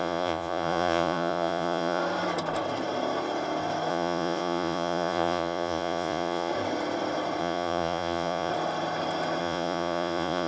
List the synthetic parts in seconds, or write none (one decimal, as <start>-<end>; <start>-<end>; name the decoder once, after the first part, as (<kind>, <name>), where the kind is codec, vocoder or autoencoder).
0.0-2.0 (vocoder, Vocos); 3.9-6.5; 7.4-8.5; 9.4-10.5